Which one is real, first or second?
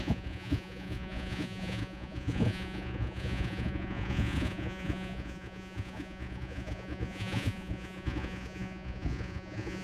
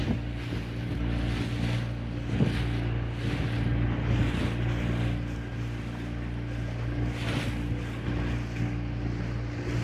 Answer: second